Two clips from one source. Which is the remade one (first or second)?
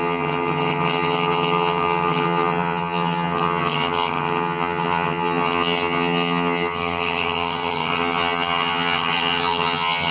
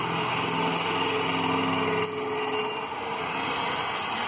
first